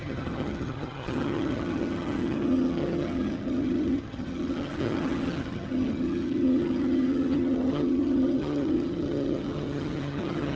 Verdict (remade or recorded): remade